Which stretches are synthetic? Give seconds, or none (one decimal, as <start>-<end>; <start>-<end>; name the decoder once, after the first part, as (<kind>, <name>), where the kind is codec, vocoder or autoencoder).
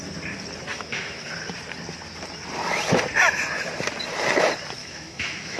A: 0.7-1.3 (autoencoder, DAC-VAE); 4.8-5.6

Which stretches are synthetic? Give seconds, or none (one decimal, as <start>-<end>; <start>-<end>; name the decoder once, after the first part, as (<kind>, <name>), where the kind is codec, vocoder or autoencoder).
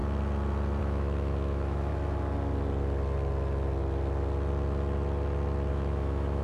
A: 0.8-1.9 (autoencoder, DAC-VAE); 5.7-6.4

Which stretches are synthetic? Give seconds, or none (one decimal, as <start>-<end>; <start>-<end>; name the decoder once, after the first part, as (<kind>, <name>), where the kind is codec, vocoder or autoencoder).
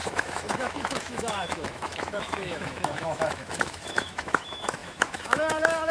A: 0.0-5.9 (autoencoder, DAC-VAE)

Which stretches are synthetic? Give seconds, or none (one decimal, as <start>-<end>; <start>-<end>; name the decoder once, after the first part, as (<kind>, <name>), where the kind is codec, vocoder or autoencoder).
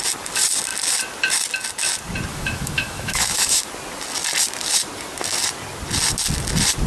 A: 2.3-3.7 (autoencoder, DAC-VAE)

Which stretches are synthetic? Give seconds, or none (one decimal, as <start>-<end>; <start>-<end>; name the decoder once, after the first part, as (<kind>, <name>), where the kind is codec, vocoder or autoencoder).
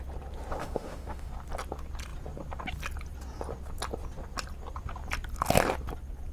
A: 0.6-1.3 (autoencoder, DAC-VAE)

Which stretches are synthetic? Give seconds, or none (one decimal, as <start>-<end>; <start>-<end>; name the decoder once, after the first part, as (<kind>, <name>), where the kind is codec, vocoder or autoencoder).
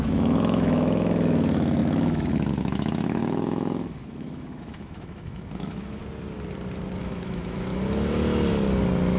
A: 0.0-6.0 (autoencoder, DAC-VAE); 7.0-7.7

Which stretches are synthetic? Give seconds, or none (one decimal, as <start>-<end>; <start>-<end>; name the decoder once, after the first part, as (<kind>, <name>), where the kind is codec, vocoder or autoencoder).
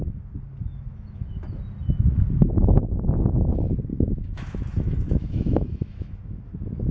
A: 0.9-1.4 (autoencoder, DAC-VAE); 3.9-6.4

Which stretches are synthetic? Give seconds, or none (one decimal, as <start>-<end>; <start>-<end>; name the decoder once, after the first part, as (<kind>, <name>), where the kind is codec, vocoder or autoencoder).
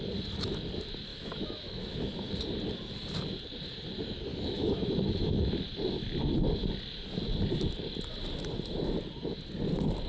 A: 1.1-2.3 (autoencoder, DAC-VAE); 4.3-5.5